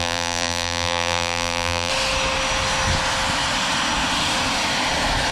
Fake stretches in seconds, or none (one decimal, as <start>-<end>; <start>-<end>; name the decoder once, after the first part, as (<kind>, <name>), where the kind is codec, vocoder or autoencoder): 0.0-1.9 (vocoder, BigVGAN v2)